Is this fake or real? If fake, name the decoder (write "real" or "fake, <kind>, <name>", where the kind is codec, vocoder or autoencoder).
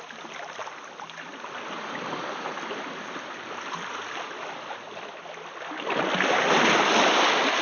real